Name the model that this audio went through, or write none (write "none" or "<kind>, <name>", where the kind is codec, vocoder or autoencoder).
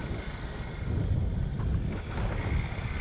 none